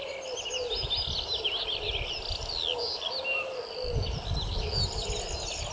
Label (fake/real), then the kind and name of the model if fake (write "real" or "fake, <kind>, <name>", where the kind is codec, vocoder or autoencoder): real